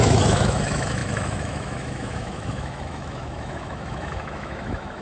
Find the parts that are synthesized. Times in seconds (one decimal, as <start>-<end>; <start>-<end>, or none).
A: 0.0-5.0